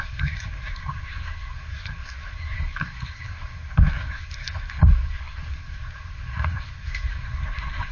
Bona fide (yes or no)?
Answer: no